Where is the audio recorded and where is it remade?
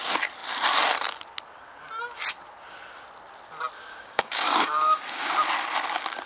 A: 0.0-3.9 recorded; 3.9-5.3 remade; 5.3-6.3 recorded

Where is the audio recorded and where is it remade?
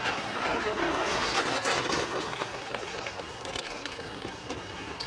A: 0.0-5.1 remade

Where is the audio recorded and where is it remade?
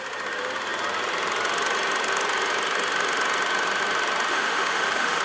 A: 0.0-4.3 recorded; 4.3-5.2 remade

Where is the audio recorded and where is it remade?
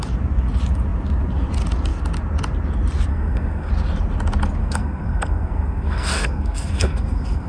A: 0.0-3.1 recorded; 3.1-3.7 remade; 3.7-4.6 recorded; 4.6-7.5 remade